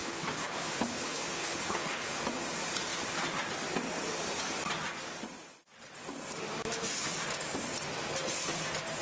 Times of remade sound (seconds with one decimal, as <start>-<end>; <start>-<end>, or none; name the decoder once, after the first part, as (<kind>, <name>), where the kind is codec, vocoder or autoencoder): 0.0-2.2 (codec, HILCodec)